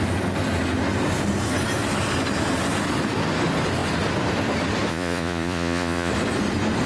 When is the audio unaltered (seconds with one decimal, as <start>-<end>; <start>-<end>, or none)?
0.0-4.9; 6.1-6.9